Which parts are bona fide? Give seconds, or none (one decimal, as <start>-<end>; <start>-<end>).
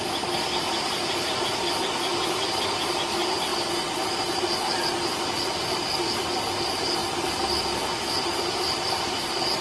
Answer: 3.5-5.9